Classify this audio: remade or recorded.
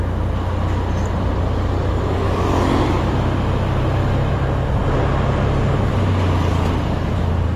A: recorded